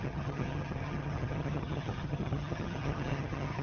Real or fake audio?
fake